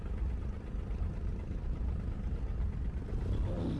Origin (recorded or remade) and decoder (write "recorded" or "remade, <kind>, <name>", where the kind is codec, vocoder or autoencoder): recorded